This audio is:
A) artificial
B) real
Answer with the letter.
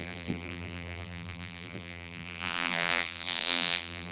A